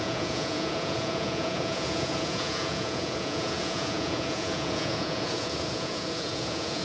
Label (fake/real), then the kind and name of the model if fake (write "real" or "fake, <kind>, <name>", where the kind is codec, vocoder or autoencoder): fake, vocoder, Vocos